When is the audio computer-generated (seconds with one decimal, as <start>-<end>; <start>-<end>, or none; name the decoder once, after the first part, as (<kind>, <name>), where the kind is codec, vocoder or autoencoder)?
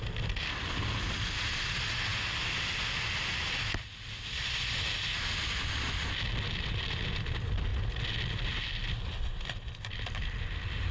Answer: none